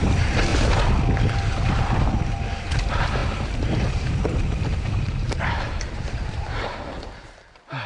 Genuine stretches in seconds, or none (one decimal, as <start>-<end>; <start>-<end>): 0.5-1.3